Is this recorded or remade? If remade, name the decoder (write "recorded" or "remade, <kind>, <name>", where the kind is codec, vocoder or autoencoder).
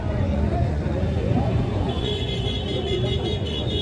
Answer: remade, vocoder, Vocos